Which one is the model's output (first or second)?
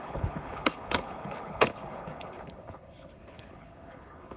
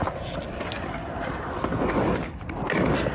first